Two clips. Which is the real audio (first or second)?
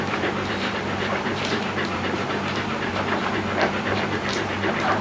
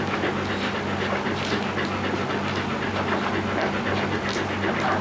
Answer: second